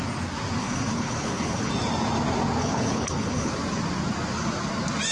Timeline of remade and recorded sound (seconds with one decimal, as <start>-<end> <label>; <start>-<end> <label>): 0.0-0.6 recorded; 0.6-1.7 remade; 1.7-2.6 recorded; 2.6-3.5 remade; 3.5-5.1 recorded